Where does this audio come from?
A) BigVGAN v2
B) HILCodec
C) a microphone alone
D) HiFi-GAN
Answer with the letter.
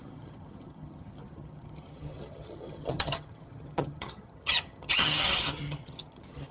D